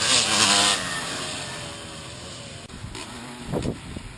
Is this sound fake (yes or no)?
no